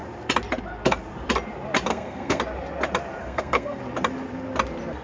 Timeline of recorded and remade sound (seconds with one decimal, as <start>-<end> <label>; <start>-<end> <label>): 0.0-1.9 recorded; 1.9-2.4 remade; 2.4-3.2 recorded; 3.2-3.8 remade; 3.8-5.0 recorded